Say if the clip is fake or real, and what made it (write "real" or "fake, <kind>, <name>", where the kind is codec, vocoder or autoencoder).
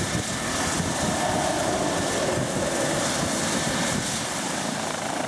real